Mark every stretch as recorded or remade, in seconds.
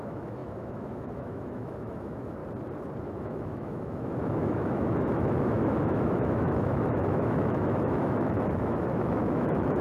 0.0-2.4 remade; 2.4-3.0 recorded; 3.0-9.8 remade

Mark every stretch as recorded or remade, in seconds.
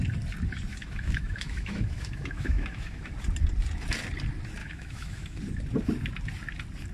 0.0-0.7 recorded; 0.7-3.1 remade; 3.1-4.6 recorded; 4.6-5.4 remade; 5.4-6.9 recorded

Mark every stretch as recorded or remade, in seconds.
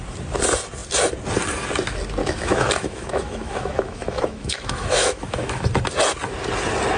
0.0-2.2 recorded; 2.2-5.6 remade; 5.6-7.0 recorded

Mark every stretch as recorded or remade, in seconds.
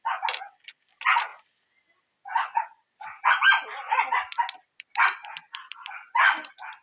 0.0-6.8 recorded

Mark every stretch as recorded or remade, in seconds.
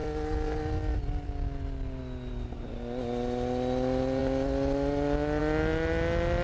0.0-6.4 recorded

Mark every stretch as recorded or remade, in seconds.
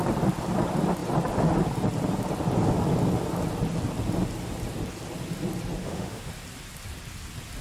0.0-5.8 recorded; 5.8-6.3 remade; 6.3-7.6 recorded